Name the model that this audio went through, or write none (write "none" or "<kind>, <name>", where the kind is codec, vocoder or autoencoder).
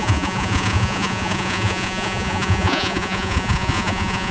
vocoder, Vocos